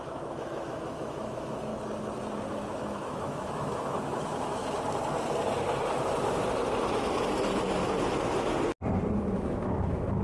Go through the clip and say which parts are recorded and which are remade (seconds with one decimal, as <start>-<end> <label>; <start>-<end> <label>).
0.0-1.7 remade; 1.7-2.5 recorded; 2.5-4.6 remade; 4.6-9.2 recorded; 9.2-10.2 remade